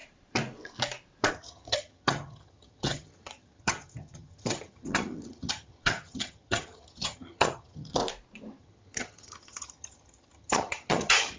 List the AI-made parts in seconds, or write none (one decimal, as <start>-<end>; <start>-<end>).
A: 1.3-8.0; 8.6-11.4